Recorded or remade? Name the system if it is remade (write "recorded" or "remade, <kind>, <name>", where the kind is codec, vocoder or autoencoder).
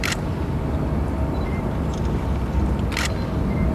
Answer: recorded